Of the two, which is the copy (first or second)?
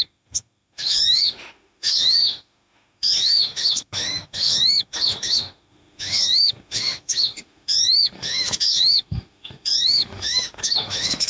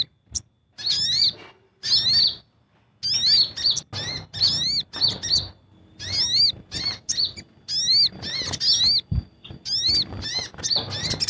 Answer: first